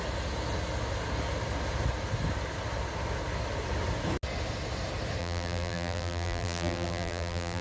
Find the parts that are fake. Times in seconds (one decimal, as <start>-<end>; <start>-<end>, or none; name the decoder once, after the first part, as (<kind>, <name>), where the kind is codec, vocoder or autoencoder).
5.2-7.6 (vocoder, BigVGAN v2)